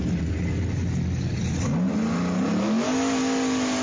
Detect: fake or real real